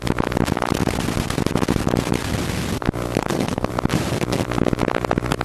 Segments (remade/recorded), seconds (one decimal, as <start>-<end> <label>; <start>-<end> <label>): 0.0-3.2 recorded; 3.2-3.7 remade; 3.7-5.4 recorded

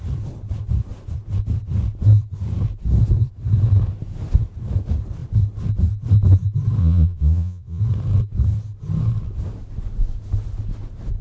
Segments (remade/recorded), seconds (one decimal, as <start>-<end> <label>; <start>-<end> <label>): 0.0-6.8 recorded; 6.8-7.8 remade; 7.8-11.2 recorded

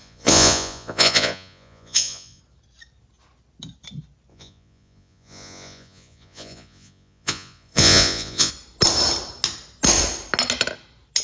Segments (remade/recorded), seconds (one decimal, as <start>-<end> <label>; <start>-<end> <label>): 0.0-2.4 remade; 2.4-4.3 recorded; 4.3-8.5 remade; 8.5-11.2 recorded

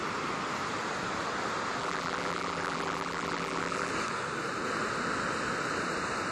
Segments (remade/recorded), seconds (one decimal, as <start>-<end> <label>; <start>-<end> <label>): 0.0-1.8 recorded; 1.8-3.9 remade; 3.9-6.3 recorded

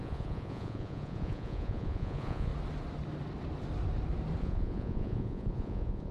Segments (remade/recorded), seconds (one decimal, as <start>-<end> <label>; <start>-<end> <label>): 0.0-2.5 remade; 2.5-4.4 recorded; 4.4-6.1 remade